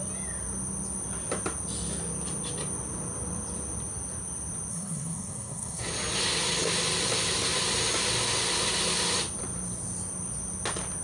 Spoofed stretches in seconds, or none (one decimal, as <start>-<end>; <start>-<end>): 4.7-5.9